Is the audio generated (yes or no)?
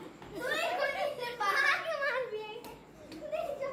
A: no